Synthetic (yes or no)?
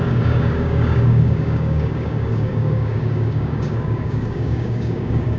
yes